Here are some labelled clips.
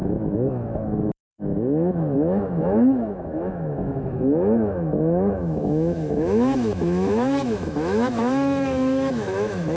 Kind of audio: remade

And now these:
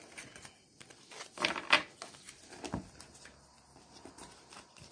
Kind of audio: recorded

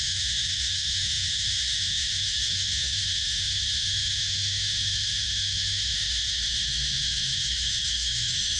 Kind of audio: remade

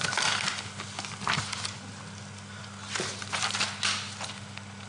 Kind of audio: recorded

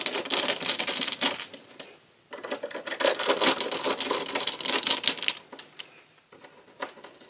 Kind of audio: recorded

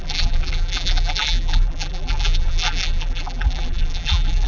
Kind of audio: remade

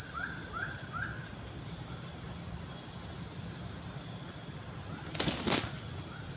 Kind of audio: recorded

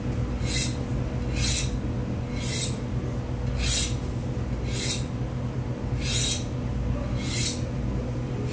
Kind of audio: recorded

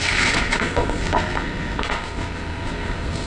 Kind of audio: remade